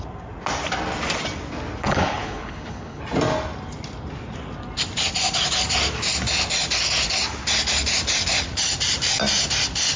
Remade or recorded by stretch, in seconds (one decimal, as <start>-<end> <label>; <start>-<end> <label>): 0.0-1.8 recorded; 1.8-3.0 remade; 3.0-10.0 recorded